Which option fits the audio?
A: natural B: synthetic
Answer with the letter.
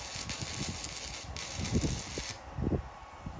A